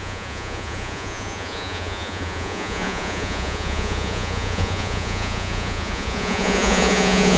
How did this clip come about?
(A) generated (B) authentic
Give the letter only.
A